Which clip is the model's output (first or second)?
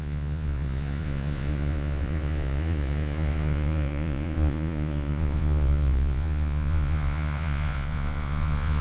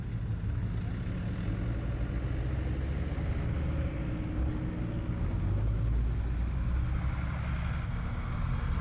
first